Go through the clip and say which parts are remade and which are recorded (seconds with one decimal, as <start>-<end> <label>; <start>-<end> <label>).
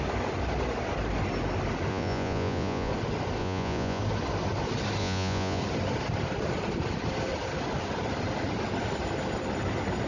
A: 0.0-1.9 recorded; 1.9-2.9 remade; 2.9-3.4 recorded; 3.4-4.0 remade; 4.0-5.0 recorded; 5.0-5.6 remade; 5.6-10.1 recorded